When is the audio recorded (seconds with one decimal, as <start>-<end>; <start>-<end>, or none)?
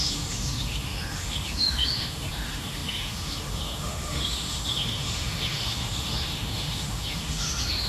none